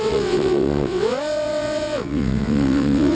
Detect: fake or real fake